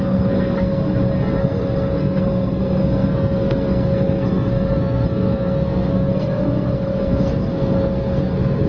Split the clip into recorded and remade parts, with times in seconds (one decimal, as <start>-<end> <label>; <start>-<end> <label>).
0.0-0.8 remade; 0.8-1.4 recorded; 1.4-8.7 remade